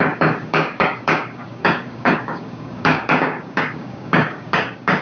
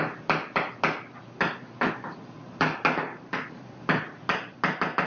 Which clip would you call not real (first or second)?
first